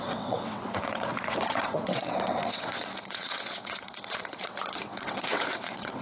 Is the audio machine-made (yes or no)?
yes